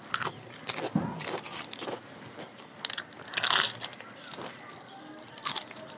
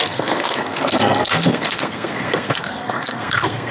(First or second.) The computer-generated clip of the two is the second